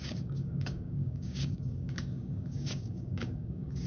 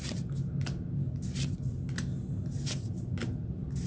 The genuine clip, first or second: second